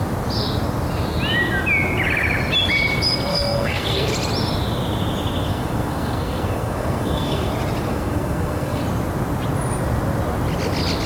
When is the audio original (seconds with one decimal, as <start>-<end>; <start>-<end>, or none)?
0.0-3.3; 4.1-5.5; 7.5-7.9; 8.8-11.1